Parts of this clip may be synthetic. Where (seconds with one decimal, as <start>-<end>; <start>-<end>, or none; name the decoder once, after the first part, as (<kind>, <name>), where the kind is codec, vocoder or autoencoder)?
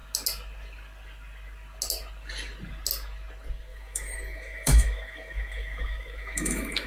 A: 3.7-6.9 (autoencoder, DAC-VAE)